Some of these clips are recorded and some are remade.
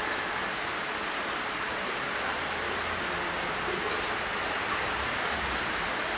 recorded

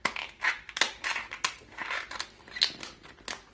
recorded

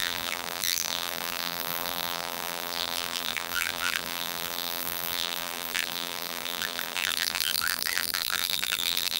remade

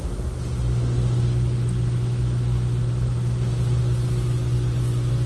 recorded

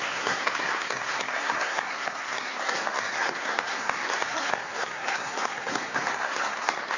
remade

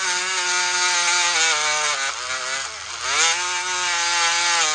recorded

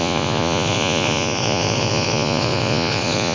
remade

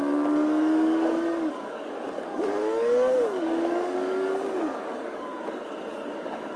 remade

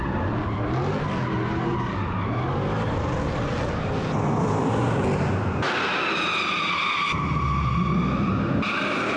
recorded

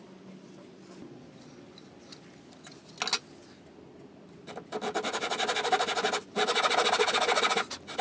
recorded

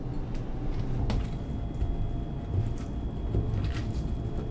recorded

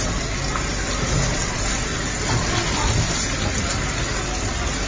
recorded